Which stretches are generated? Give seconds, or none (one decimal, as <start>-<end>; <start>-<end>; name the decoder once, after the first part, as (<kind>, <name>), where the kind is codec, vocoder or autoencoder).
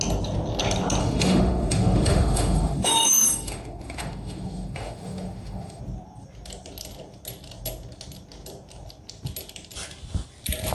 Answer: 1.0-5.8 (autoencoder, DAC-VAE)